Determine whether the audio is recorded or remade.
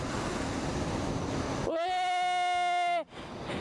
recorded